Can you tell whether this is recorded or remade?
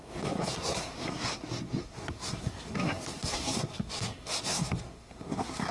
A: remade